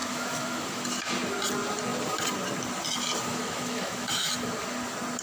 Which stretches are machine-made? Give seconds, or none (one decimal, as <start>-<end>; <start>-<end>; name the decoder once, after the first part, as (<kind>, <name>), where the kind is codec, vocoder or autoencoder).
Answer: 0.0-1.1 (autoencoder, DAC-VAE); 3.3-4.3